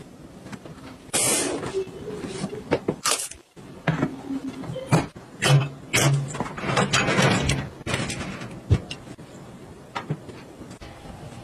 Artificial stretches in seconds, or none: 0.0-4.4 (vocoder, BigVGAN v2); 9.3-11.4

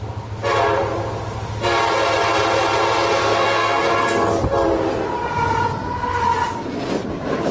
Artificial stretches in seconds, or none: 3.2-3.8 (codec, SNAC)

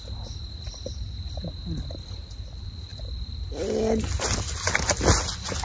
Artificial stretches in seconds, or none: none

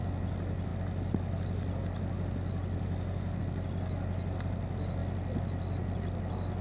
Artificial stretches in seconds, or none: none

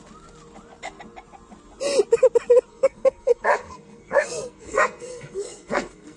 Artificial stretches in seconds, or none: 2.7-6.2 (codec, SNAC)

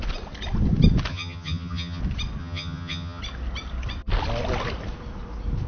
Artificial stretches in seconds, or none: 1.1-2.0 (vocoder, HiFi-GAN); 2.4-3.2

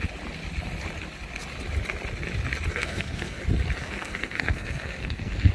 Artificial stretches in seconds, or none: 2.7-3.4 (codec, SNAC); 3.8-5.5

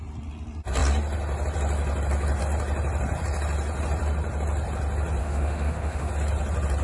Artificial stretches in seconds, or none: 5.2-6.1 (autoencoder, DAC-VAE)